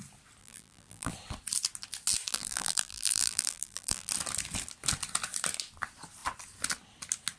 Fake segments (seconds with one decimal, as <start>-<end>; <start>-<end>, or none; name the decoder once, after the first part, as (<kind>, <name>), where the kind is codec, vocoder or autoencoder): 0.4-1.1 (vocoder, BigVGAN v2); 2.3-4.1

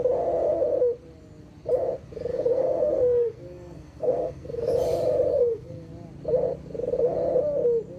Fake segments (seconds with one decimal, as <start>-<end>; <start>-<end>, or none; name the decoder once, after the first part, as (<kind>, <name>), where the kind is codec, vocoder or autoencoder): 2.3-4.7 (codec, SNAC); 5.3-5.9

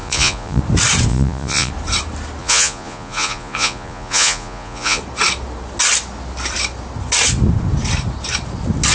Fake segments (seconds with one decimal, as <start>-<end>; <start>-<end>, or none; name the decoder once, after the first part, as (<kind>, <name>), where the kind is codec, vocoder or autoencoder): 0.0-0.6 (vocoder, Vocos); 1.1-1.7; 2.4-5.0

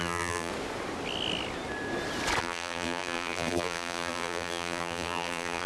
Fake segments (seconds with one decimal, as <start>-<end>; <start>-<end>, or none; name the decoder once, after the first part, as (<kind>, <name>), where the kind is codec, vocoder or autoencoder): 0.0-0.5 (vocoder, BigVGAN v2); 2.4-5.7

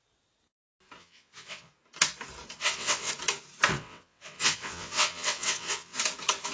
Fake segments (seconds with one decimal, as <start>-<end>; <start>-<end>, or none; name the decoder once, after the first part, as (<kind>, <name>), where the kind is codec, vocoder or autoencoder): 1.0-1.7 (vocoder, WaveNeXt); 2.6-3.1; 3.7-6.0

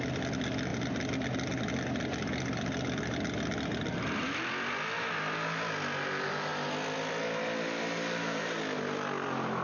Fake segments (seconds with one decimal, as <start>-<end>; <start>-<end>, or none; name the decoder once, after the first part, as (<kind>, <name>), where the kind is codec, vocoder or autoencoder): none

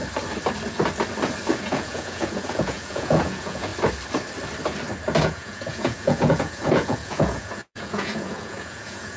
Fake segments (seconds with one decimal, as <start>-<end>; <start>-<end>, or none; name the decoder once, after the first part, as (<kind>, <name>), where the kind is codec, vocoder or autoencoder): 1.6-3.7 (vocoder, Vocos); 5.2-9.2

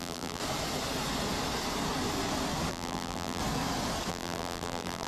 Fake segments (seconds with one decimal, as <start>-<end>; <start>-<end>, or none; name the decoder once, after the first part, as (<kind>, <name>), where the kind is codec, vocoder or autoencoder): 0.0-0.4 (vocoder, BigVGAN v2); 2.7-3.4; 4.1-5.1